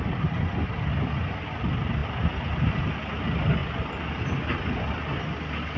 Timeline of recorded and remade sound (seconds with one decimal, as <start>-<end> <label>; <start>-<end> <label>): 0.0-5.8 recorded